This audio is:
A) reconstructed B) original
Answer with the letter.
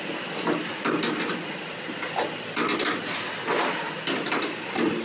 B